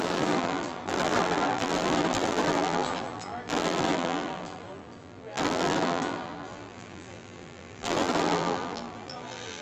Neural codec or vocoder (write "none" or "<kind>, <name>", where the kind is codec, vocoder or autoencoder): vocoder, BigVGAN v2